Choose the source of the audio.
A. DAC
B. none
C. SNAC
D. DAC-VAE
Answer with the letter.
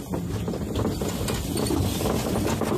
B